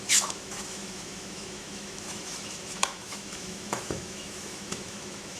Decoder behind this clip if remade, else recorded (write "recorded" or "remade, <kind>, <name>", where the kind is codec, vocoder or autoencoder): remade, autoencoder, DAC-VAE